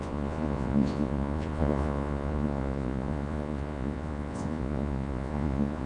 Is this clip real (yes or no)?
no